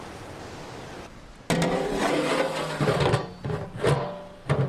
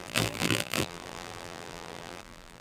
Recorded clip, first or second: first